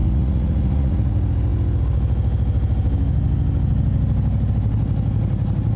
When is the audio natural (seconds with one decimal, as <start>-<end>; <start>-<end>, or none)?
1.1-5.8